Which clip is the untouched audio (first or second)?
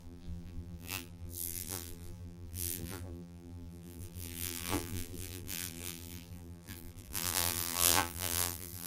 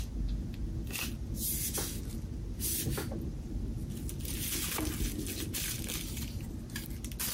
second